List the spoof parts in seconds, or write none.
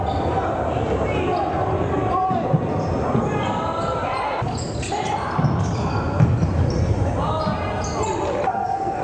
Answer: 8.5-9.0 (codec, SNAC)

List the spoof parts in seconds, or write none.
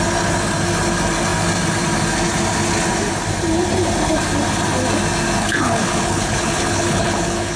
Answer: 5.4-7.6 (codec, HILCodec)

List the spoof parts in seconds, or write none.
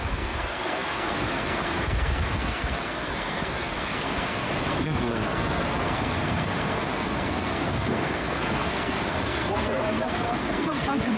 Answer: 0.0-11.2 (codec, SNAC)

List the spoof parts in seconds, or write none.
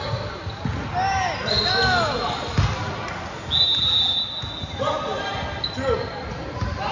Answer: none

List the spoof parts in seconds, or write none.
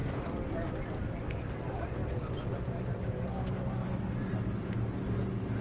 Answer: 3.8-4.8 (vocoder, BigVGAN v2)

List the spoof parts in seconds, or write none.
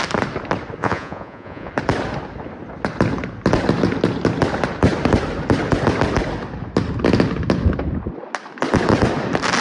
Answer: 0.8-1.7 (vocoder, Vocos)